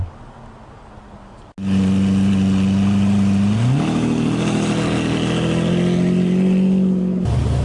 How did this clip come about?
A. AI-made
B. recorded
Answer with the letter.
B